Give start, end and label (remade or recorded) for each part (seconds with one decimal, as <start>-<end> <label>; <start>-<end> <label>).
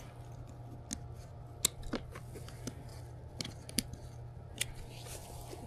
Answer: 0.0-5.7 recorded